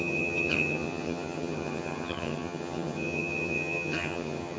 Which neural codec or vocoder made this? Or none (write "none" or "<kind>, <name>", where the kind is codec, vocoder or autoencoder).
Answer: vocoder, HiFi-GAN